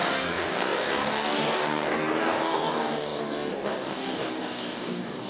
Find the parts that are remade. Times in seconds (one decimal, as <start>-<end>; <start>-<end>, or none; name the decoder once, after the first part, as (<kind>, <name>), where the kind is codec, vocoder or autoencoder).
0.0-5.3 (codec, DAC)